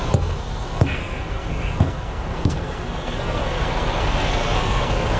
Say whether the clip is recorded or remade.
remade